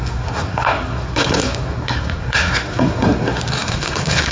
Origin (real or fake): fake